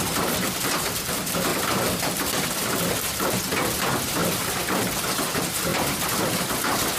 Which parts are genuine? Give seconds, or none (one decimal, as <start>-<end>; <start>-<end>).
0.0-1.5; 2.9-4.2; 4.8-5.7; 6.4-7.0